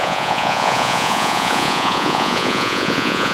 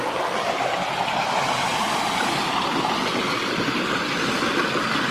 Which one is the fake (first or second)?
first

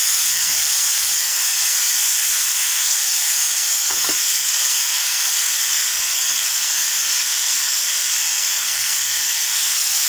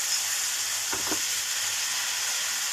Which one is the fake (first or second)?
first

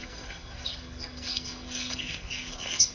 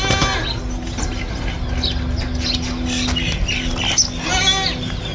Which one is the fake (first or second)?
first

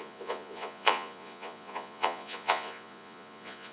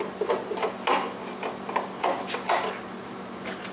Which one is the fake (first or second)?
first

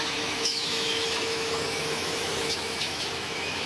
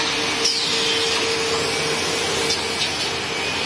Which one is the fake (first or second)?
first